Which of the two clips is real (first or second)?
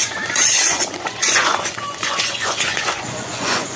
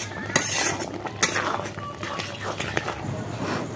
second